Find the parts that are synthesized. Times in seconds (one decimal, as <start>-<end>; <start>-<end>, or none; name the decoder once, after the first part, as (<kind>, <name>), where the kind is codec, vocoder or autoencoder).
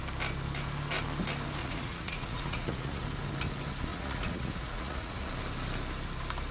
1.6-3.0 (vocoder, Vocos); 3.9-5.3